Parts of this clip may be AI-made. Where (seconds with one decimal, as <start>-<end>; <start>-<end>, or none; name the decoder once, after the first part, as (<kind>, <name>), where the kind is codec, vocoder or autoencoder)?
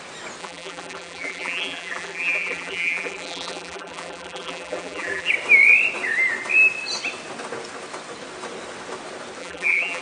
0.4-5.3 (vocoder, BigVGAN v2); 9.4-10.0